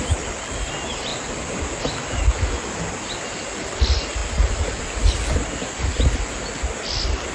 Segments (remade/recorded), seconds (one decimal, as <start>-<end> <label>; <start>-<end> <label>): 0.0-7.3 recorded